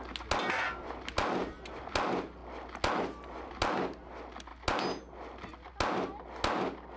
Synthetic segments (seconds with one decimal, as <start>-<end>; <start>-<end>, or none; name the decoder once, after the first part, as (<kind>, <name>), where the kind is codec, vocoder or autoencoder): none